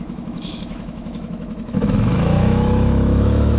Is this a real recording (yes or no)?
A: no